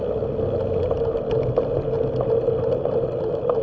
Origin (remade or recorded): recorded